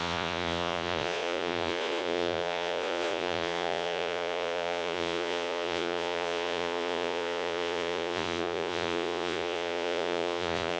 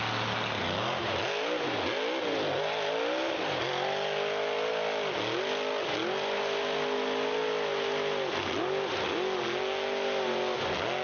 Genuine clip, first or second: second